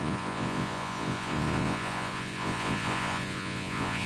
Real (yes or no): no